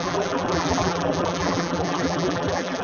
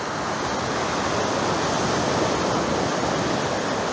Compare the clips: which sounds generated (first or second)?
first